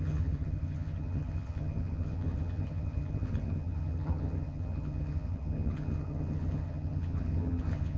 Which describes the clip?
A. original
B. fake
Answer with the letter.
B